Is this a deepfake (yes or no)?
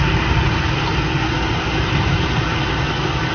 no